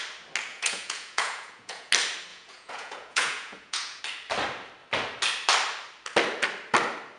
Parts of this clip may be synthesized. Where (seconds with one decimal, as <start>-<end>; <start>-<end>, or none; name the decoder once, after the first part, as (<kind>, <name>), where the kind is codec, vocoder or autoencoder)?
0.5-1.9 (vocoder, Vocos); 2.3-4.0

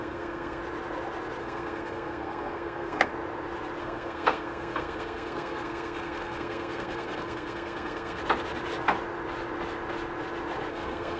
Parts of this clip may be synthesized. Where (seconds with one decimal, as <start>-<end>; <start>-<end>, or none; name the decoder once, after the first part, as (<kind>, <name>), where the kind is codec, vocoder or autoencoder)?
0.0-0.6 (codec, SNAC); 1.4-3.1; 3.8-8.2; 10.7-11.2

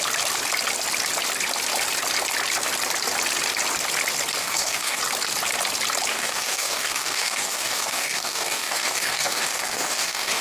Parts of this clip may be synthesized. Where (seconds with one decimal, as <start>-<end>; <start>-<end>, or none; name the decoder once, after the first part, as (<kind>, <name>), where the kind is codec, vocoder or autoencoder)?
4.4-5.0 (codec, DAC); 6.1-10.4

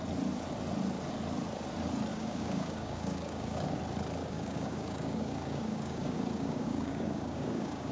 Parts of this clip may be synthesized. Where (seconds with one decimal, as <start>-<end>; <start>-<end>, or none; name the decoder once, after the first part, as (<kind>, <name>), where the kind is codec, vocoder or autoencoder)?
2.1-3.8 (codec, DAC); 4.2-7.9

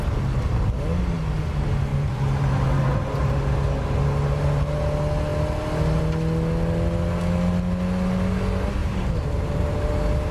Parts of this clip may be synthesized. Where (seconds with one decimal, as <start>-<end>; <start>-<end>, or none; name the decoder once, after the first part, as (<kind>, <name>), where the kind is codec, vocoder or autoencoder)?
1.9-2.9 (vocoder, BigVGAN v2); 8.8-9.9